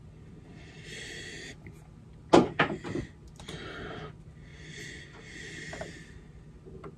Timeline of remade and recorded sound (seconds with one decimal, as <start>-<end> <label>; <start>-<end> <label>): 0.0-4.5 recorded; 4.5-5.1 remade; 5.1-7.0 recorded

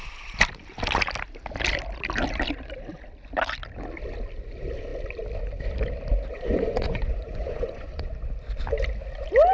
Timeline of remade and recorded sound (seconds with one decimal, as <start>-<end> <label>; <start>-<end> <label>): 0.0-6.3 recorded; 6.3-8.1 remade; 8.1-9.5 recorded

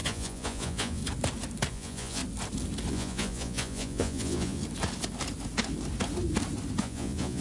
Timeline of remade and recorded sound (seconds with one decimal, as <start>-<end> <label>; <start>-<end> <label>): 0.0-1.0 remade; 1.0-1.7 recorded; 1.7-2.2 remade; 2.2-2.9 recorded; 2.9-4.6 remade; 4.6-6.8 recorded; 6.8-7.4 remade